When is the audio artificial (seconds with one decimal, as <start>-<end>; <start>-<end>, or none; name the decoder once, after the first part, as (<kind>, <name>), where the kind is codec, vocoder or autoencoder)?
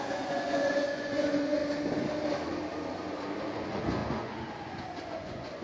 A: 0.0-1.6 (vocoder, Vocos); 3.4-5.6